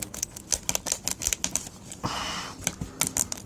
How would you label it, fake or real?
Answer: real